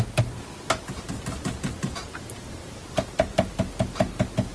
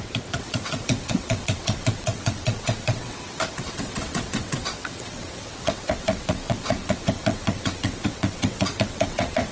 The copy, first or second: second